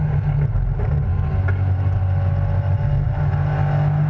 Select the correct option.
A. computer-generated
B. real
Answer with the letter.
B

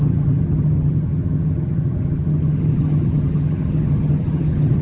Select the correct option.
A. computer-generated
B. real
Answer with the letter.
A